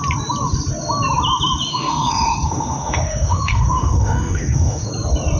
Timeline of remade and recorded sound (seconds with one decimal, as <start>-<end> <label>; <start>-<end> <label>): 0.0-1.7 recorded; 1.7-4.9 remade; 4.9-5.4 recorded